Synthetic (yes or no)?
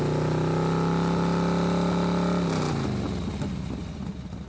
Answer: no